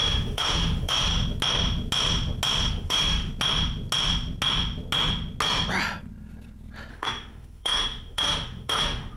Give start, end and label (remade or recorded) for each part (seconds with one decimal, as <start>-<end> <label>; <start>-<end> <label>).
0.0-1.1 remade; 1.1-2.7 recorded; 2.7-3.3 remade; 3.3-6.9 recorded; 6.9-9.2 remade